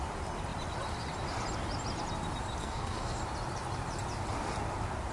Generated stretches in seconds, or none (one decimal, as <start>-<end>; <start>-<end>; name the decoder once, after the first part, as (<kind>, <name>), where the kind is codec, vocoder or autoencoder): 2.6-3.2 (codec, SNAC)